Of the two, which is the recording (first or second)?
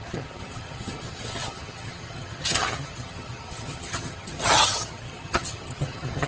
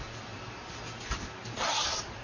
second